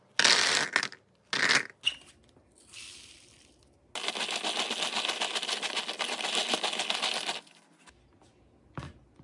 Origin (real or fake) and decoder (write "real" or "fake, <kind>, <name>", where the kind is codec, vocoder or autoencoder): real